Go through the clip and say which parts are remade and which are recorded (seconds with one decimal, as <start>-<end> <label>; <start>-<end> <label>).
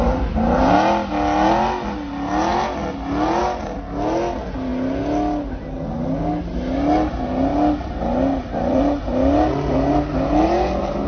0.0-8.4 recorded; 8.4-9.0 remade; 9.0-11.1 recorded